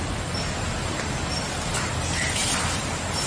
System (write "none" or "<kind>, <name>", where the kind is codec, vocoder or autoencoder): none